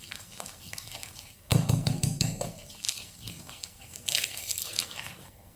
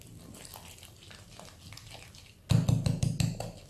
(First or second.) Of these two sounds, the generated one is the first